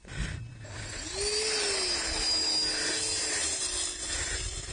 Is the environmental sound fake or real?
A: real